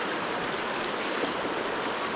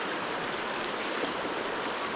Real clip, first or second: first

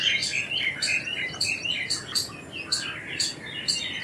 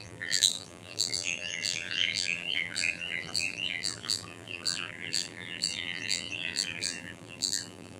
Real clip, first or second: first